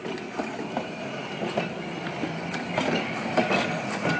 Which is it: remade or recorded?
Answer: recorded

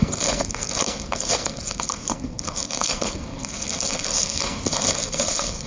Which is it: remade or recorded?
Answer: remade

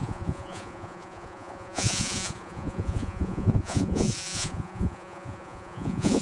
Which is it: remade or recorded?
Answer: remade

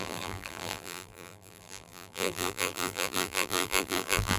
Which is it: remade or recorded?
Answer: remade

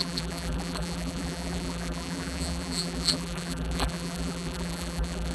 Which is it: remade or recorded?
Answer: remade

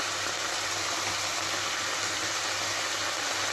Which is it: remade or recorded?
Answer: recorded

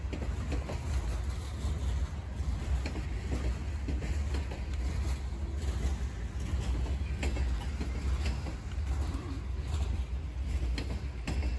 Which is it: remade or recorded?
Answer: recorded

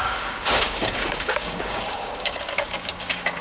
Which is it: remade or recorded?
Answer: remade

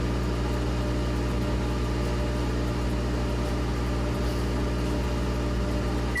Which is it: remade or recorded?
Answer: recorded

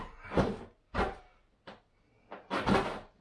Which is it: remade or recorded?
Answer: recorded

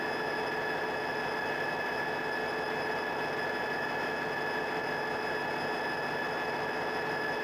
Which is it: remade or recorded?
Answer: recorded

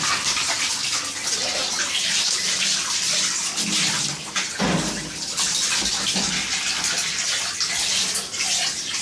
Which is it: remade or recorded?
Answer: recorded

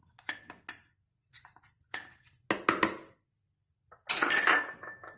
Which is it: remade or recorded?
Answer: recorded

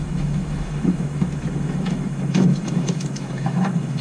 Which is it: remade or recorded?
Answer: remade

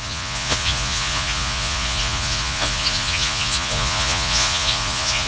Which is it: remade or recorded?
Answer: remade